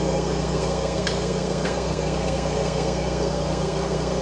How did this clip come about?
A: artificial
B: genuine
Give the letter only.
A